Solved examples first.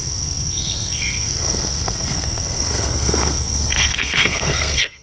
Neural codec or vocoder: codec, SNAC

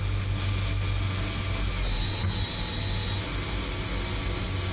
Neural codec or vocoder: none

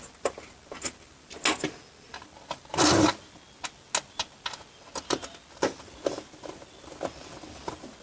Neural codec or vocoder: none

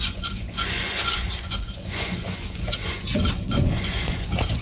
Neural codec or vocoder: vocoder, Vocos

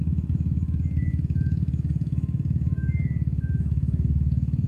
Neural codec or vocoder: autoencoder, DAC-VAE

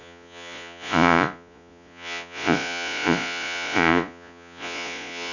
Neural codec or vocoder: vocoder, Vocos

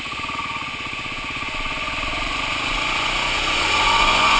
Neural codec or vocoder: vocoder, Vocos